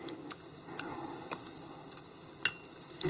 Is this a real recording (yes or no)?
yes